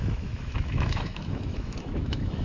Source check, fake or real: fake